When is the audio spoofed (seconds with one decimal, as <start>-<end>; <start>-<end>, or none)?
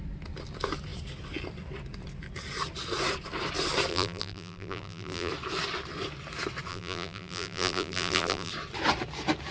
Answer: 3.9-5.3; 6.7-8.5